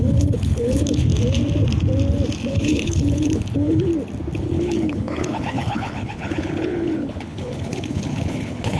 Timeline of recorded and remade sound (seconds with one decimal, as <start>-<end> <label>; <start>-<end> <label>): 0.0-1.1 remade; 1.1-2.5 recorded; 2.5-3.9 remade; 3.9-4.4 recorded; 4.4-8.8 remade